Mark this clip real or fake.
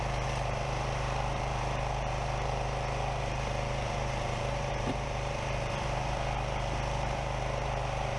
fake